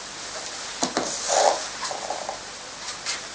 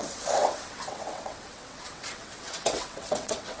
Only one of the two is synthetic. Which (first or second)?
second